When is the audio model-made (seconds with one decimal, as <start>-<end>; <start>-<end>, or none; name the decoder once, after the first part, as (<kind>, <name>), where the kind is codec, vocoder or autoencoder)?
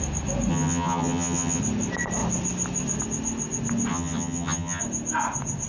0.5-1.6 (vocoder, HiFi-GAN); 3.9-4.8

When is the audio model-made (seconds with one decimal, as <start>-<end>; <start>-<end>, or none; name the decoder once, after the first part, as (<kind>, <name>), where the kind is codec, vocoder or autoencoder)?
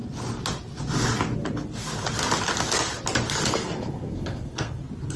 3.5-4.8 (codec, SNAC)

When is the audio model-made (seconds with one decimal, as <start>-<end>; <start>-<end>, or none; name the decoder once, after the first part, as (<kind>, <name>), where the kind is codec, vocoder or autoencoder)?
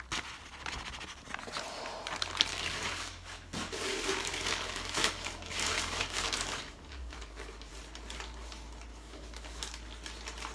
2.5-7.7 (codec, DAC); 8.9-9.6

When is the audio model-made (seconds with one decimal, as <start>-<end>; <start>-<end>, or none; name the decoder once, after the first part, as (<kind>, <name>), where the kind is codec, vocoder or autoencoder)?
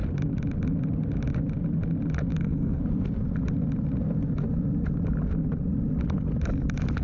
2.3-2.8 (codec, SNAC)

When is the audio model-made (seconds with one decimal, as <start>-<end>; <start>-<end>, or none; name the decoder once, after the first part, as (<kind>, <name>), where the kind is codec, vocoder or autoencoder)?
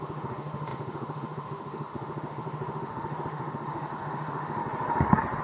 0.0-4.6 (autoencoder, DAC-VAE)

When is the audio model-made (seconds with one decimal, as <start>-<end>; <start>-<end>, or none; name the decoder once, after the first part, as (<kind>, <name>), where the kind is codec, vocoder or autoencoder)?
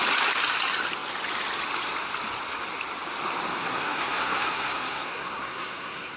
3.6-6.2 (codec, SNAC)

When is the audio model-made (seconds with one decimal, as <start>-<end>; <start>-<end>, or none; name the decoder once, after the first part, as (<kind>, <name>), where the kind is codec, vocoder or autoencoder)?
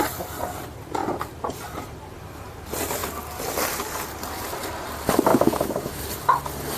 5.3-6.0 (autoencoder, DAC-VAE)